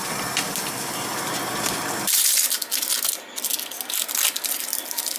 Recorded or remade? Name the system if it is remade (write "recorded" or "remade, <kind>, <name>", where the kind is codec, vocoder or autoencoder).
recorded